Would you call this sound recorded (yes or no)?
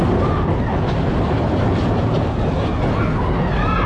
yes